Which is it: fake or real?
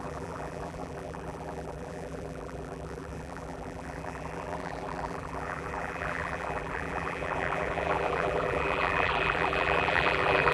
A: fake